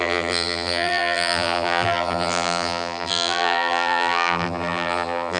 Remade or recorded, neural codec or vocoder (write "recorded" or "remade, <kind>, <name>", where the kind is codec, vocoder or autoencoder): remade, vocoder, BigVGAN v2